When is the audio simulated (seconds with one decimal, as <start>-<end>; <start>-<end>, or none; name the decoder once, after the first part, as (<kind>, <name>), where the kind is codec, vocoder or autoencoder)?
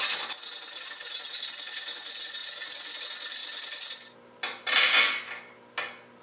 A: none